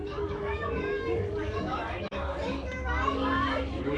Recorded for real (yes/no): no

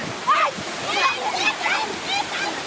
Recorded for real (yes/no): yes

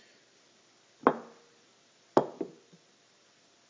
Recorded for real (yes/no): yes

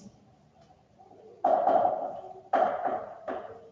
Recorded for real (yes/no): yes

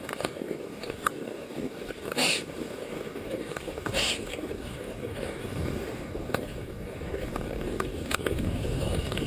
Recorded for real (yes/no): no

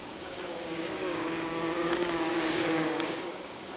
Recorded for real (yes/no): no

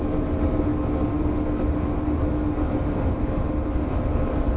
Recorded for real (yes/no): yes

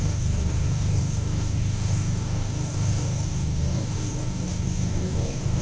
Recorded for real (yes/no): no